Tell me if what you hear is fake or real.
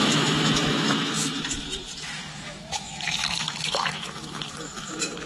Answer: fake